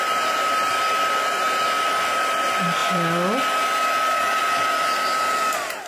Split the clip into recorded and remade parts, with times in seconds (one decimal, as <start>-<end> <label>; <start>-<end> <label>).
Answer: 0.0-5.9 recorded